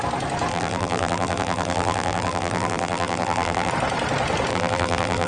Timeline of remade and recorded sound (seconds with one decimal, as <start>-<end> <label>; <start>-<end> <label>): 0.0-0.5 recorded; 0.5-3.7 remade; 3.7-4.5 recorded; 4.5-5.3 remade